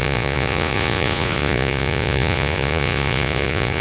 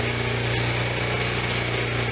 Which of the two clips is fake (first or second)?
first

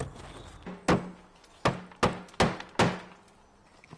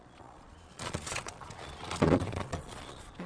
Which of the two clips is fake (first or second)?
second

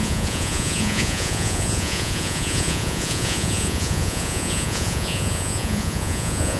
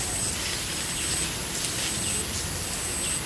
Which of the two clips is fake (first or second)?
first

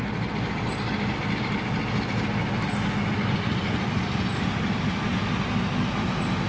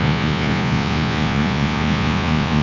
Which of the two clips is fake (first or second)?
second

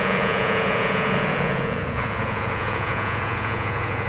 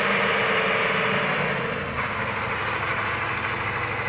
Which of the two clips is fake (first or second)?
first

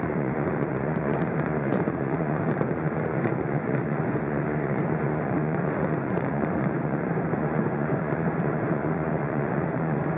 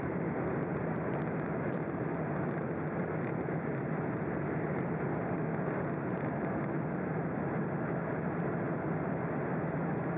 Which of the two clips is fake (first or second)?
first